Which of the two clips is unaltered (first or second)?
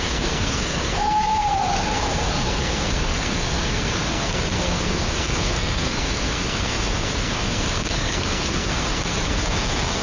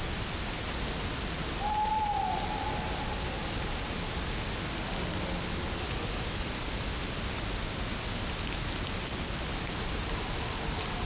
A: second